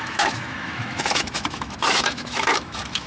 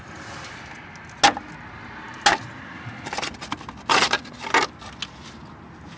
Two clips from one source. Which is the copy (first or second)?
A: first